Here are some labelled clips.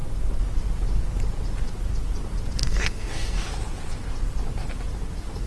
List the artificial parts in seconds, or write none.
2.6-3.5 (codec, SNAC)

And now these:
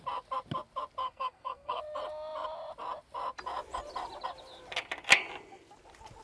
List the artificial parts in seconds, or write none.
1.0-1.8 (codec, SNAC)

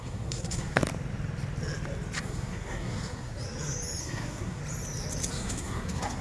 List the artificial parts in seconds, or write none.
0.0-0.8 (codec, SNAC); 2.2-3.3; 4.0-4.6; 5.3-6.2

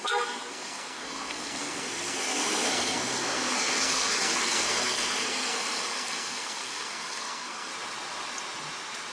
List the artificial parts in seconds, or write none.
0.0-7.7 (codec, SNAC)